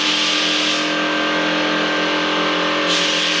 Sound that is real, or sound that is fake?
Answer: real